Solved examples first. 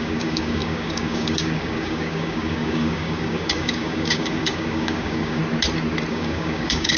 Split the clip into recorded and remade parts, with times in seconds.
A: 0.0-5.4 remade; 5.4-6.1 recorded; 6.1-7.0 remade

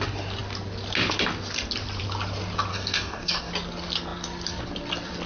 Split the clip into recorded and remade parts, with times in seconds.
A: 0.0-2.7 recorded; 2.7-3.5 remade; 3.5-5.3 recorded

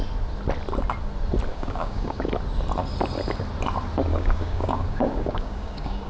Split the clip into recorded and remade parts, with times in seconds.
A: 0.0-1.5 recorded; 1.5-2.3 remade; 2.3-4.1 recorded; 4.1-6.1 remade

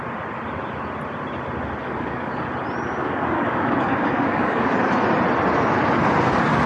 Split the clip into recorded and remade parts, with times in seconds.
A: 0.0-1.8 recorded; 1.8-2.3 remade; 2.3-3.0 recorded; 3.0-4.7 remade; 4.7-6.7 recorded

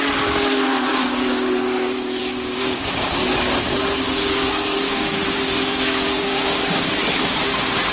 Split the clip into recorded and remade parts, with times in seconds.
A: 0.0-0.9 recorded; 0.9-1.5 remade; 1.5-2.2 recorded; 2.2-6.9 remade; 6.9-7.9 recorded

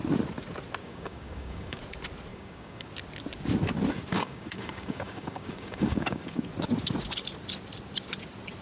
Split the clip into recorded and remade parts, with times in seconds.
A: 0.0-0.8 recorded; 0.8-1.8 remade; 1.8-2.3 recorded; 2.3-2.9 remade; 2.9-4.1 recorded; 4.1-6.5 remade; 6.5-8.6 recorded